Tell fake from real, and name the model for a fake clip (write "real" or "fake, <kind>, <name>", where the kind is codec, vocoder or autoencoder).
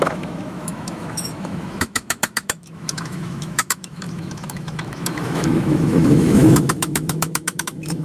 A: fake, autoencoder, DAC-VAE